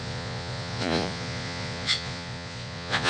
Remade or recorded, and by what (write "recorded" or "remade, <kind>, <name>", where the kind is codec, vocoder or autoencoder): remade, vocoder, Vocos